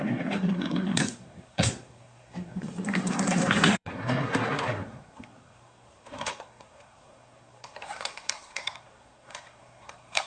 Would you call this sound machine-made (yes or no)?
yes